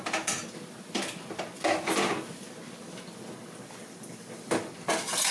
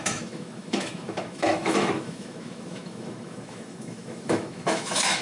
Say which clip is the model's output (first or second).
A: second